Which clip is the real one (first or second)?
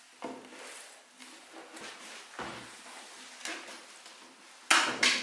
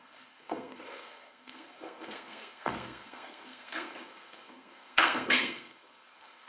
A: first